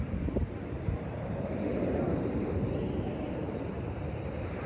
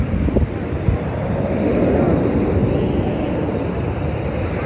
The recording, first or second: second